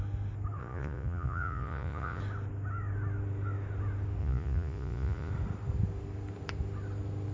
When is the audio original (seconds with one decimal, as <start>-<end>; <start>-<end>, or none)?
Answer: 0.0-0.6; 2.2-4.2; 5.3-7.3

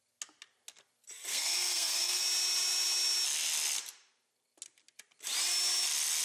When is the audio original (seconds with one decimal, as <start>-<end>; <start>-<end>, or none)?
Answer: 0.0-1.3; 2.2-6.2

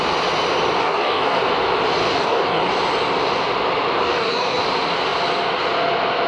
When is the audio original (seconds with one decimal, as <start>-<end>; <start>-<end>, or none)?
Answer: 0.0-0.8; 1.4-2.0; 2.7-4.0; 4.6-6.3

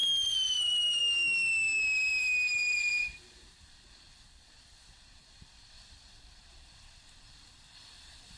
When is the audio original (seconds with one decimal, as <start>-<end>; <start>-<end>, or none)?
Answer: 0.0-0.6; 1.0-1.7

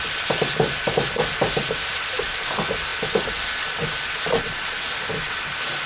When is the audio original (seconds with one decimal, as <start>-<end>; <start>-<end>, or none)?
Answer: 0.0-5.9